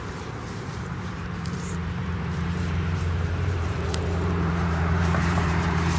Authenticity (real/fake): fake